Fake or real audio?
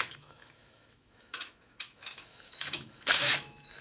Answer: fake